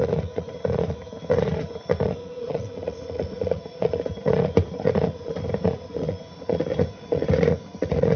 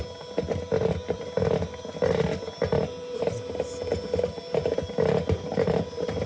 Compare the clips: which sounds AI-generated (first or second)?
first